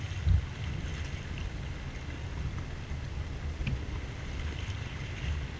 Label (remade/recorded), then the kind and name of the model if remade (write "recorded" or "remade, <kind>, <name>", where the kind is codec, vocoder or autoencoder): recorded